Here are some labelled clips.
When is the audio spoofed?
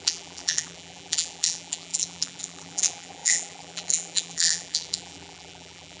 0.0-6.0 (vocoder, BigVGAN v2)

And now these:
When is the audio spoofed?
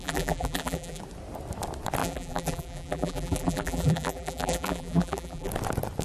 0.0-1.0 (vocoder, BigVGAN v2); 2.0-5.5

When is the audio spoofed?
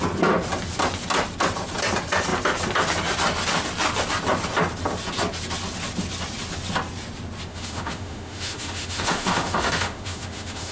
7.5-10.7 (autoencoder, DAC-VAE)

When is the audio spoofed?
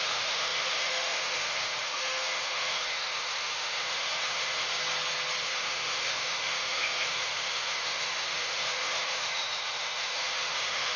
0.0-4.8 (autoencoder, DAC-VAE); 5.4-11.0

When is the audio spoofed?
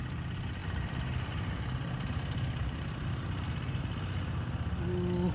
0.6-3.8 (vocoder, BigVGAN v2)